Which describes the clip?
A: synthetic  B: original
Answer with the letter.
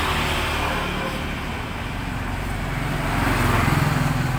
B